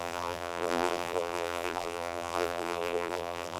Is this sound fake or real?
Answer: fake